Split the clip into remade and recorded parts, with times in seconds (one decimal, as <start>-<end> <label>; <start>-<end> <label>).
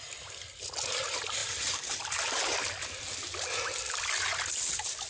0.0-5.1 recorded